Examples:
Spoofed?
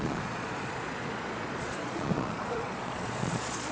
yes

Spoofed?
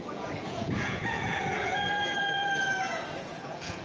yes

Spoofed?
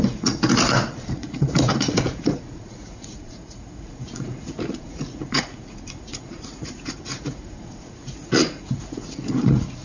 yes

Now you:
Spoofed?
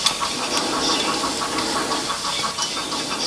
no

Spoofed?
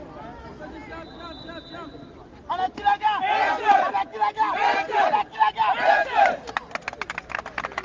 no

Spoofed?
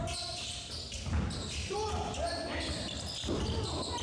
no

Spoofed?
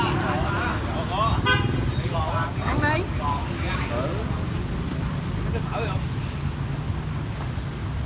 no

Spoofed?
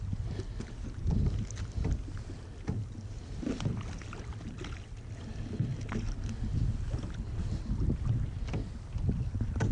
no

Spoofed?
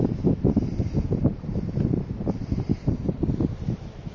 no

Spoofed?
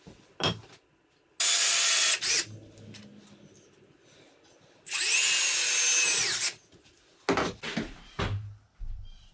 no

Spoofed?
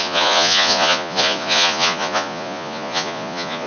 yes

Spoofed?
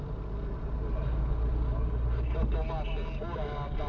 no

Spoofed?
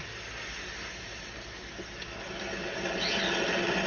no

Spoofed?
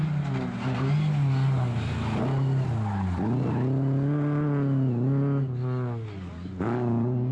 no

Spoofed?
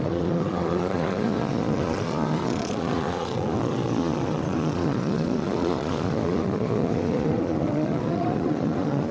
yes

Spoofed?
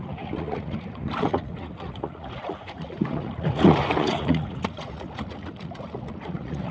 yes